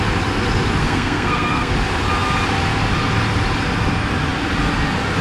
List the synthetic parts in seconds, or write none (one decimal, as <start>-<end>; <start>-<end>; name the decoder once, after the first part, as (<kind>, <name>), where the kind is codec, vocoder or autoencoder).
0.8-1.7 (codec, SNAC)